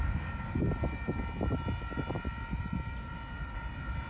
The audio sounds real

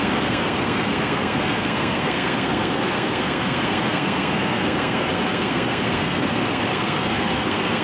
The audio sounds fake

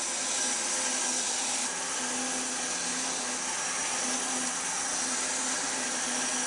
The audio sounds real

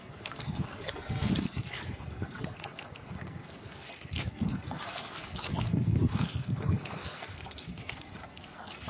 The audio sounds fake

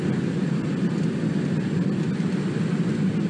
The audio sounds real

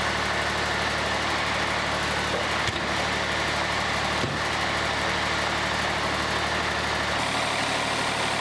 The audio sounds real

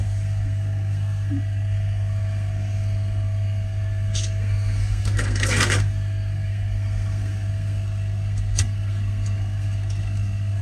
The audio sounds fake